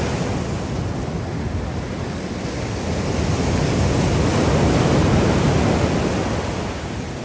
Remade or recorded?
recorded